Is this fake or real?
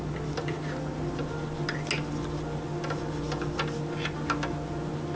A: real